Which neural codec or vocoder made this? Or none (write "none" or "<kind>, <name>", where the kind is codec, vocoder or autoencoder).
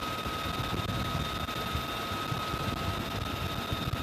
none